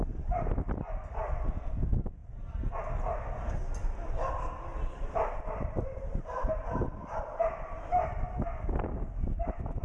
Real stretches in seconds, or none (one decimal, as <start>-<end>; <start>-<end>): 0.0-4.7; 7.5-9.8